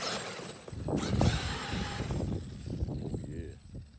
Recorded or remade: recorded